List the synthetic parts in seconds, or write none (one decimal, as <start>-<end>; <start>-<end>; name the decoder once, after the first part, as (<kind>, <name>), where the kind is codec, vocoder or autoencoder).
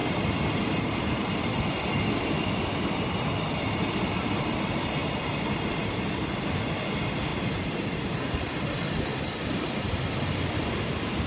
7.3-9.8 (vocoder, BigVGAN v2)